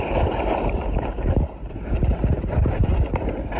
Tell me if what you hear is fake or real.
fake